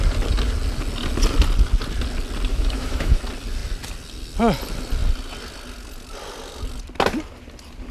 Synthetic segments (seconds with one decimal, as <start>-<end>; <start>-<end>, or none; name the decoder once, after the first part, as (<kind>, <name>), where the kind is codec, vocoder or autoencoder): 2.5-3.2 (autoencoder, DAC-VAE)